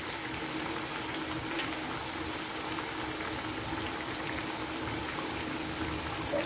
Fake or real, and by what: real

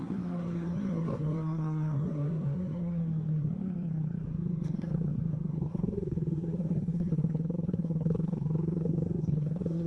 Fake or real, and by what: fake, codec, SNAC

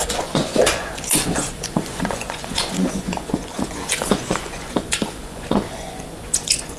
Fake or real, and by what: fake, vocoder, Vocos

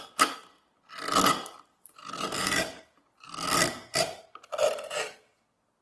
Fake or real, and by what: real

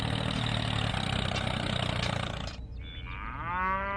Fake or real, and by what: real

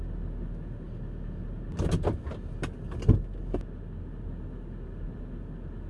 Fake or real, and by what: real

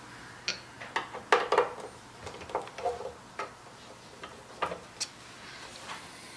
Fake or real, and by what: real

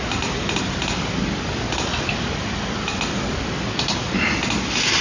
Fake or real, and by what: real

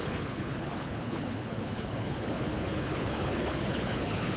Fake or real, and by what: fake, codec, HILCodec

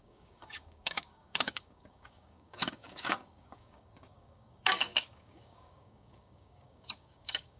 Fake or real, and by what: fake, codec, DAC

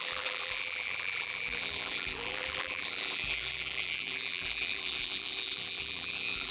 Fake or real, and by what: fake, vocoder, BigVGAN v2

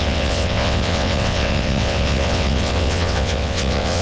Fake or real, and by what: fake, vocoder, WaveNeXt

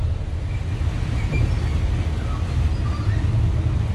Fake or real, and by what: real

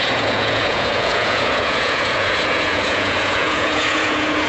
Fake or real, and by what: fake, vocoder, Vocos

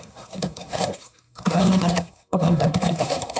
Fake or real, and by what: fake, codec, SNAC